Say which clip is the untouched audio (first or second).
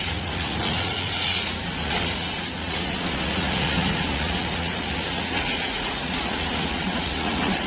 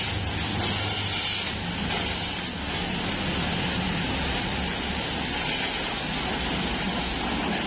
second